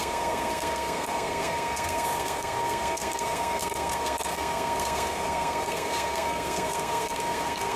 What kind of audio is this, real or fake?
fake